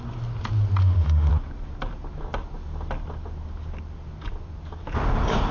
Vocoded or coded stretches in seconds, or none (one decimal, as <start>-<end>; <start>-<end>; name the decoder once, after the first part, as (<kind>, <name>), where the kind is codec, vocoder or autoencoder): 0.8-1.3 (autoencoder, DAC-VAE)